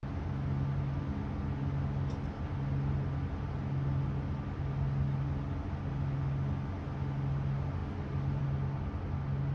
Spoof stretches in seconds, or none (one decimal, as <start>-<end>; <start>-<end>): none